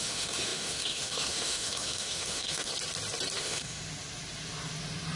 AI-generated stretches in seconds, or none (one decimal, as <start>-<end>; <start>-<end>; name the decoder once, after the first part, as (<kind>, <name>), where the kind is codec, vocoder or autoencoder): 0.0-2.7 (autoencoder, DAC-VAE); 3.4-3.8